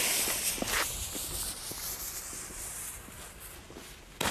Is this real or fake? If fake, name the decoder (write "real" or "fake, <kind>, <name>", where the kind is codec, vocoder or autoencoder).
real